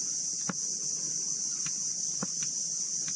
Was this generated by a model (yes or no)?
no